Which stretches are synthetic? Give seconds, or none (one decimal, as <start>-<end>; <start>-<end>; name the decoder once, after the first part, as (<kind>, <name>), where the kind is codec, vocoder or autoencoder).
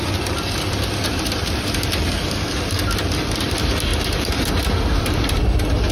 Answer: 3.9-4.5 (vocoder, BigVGAN v2)